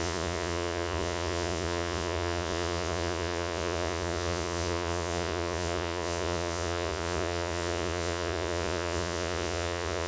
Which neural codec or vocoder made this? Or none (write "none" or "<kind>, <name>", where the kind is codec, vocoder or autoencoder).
vocoder, Vocos